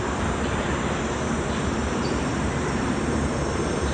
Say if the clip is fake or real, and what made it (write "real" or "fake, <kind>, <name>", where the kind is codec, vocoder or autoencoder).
fake, vocoder, BigVGAN v2